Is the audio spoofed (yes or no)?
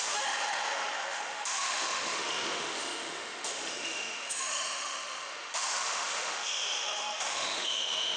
yes